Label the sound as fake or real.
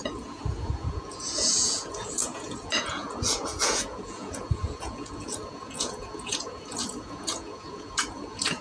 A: fake